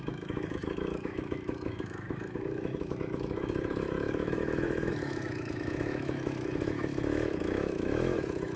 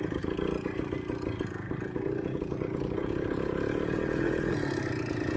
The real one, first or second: second